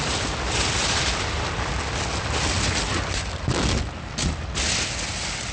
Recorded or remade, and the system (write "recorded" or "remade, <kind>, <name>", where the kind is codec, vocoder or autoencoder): recorded